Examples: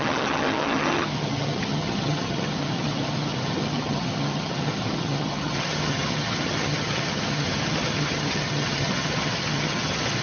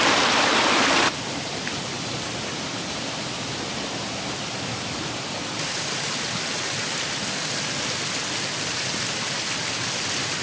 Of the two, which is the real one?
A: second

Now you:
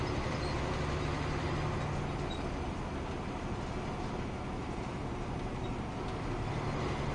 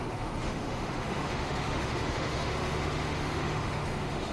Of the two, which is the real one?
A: first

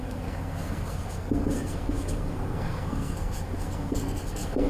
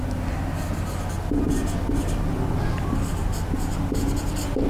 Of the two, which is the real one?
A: second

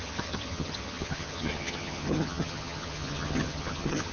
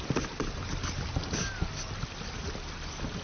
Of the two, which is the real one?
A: second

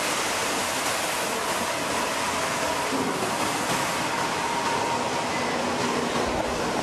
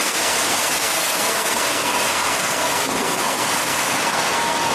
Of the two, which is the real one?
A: first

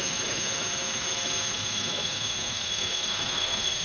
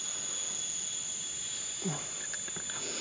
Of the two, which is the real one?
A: second